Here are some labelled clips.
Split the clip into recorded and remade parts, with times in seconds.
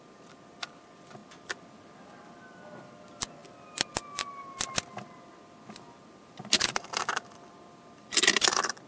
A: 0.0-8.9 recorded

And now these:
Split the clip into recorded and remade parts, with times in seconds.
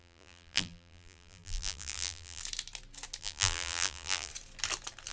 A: 0.0-2.4 remade; 2.4-3.2 recorded; 3.2-4.3 remade; 4.3-5.1 recorded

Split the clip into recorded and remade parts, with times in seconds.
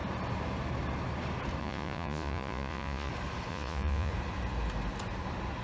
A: 0.0-1.6 recorded; 1.6-3.1 remade; 3.1-3.5 recorded; 3.5-4.1 remade; 4.1-5.6 recorded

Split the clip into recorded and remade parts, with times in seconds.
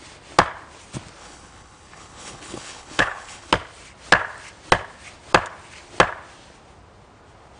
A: 0.0-1.2 recorded; 1.2-3.5 remade; 3.5-7.6 recorded